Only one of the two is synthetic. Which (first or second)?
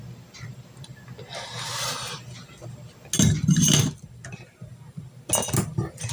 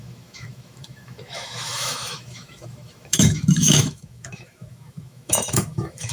second